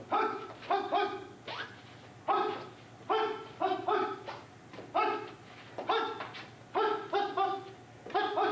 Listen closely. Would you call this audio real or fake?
real